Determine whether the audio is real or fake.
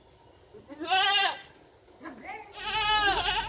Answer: real